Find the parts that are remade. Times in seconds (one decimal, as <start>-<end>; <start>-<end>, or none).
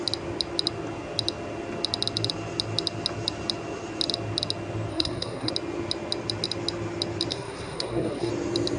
4.9-5.5; 7.3-8.3